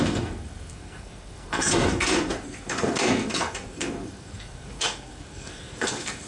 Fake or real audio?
fake